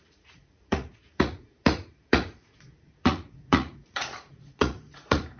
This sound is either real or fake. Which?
fake